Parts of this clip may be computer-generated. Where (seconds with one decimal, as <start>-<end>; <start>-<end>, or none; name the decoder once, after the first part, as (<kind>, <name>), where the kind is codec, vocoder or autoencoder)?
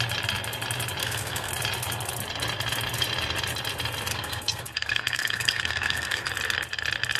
1.0-1.5 (codec, SNAC); 4.1-6.3